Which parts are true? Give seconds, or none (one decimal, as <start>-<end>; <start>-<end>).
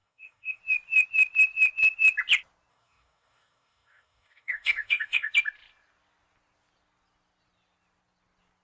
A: 0.6-2.7; 5.3-8.6